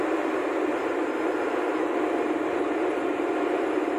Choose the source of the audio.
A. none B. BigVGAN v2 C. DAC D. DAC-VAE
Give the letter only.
B